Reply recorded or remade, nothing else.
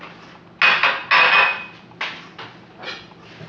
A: recorded